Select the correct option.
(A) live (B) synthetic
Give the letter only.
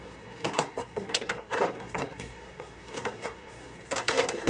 B